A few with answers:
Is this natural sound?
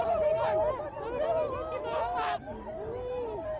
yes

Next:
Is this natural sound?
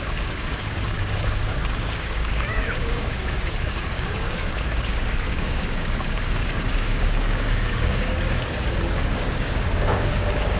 no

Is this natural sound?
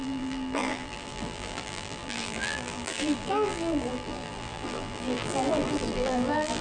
no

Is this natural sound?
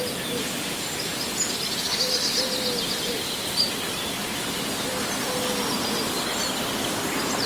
yes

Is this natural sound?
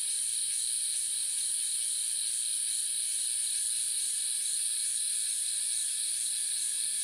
yes